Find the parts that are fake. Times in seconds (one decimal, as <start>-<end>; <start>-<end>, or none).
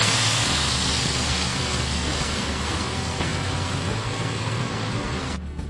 0.0-5.7